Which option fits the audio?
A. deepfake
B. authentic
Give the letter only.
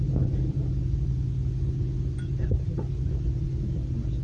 B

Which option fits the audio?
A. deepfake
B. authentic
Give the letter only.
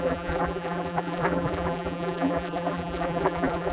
A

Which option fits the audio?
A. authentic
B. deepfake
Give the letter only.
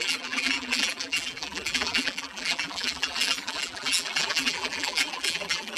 B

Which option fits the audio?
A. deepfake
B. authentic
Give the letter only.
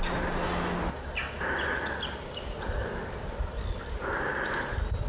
B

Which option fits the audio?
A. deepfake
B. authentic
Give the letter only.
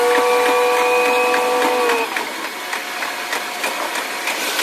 B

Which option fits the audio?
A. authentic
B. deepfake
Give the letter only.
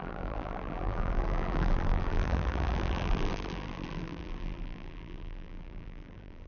B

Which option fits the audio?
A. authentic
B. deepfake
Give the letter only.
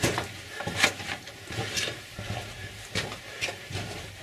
B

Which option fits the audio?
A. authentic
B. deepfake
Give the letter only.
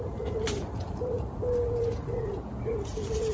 B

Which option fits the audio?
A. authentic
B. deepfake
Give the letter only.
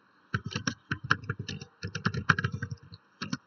B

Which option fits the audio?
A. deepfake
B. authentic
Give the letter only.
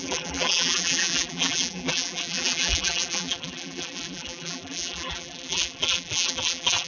A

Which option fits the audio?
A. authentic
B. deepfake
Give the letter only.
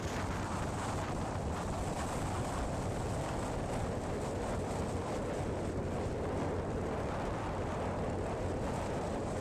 A